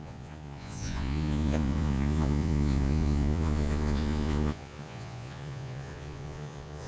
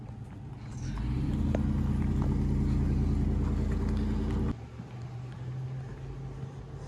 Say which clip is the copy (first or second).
first